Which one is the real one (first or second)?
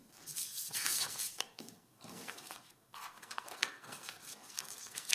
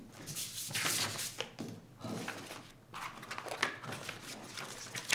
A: second